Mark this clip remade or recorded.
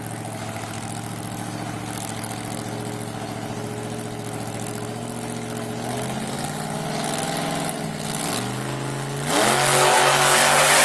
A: recorded